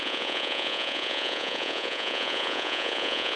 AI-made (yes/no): yes